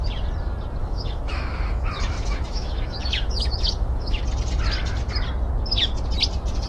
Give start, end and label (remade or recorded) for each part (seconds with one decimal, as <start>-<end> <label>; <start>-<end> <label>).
0.0-0.8 recorded; 0.8-4.2 remade; 4.2-6.7 recorded